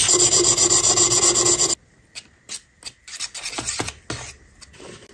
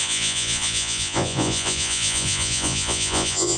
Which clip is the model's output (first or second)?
second